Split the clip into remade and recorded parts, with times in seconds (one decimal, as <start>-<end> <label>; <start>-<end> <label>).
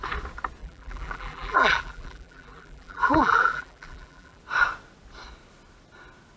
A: 0.0-0.6 recorded; 0.6-4.4 remade; 4.4-6.4 recorded